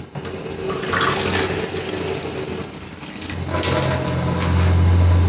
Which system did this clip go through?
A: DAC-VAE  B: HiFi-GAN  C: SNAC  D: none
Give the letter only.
D